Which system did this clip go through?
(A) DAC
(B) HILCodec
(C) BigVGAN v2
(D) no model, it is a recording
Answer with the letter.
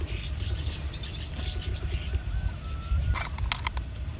D